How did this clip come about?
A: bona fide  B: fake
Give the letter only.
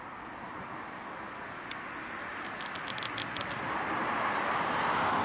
A